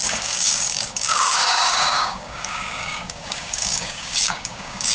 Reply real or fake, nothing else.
fake